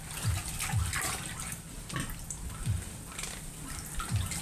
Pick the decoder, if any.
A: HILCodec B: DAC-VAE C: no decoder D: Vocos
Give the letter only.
C